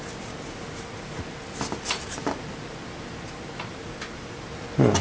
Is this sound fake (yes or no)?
no